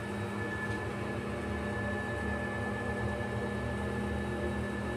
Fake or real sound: real